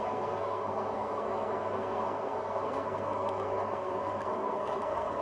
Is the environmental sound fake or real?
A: fake